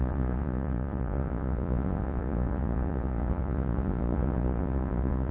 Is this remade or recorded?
remade